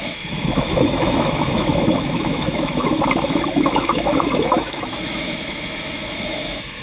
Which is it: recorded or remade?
remade